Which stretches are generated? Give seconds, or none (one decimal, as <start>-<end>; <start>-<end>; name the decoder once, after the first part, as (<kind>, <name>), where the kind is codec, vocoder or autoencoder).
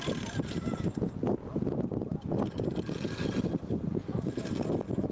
none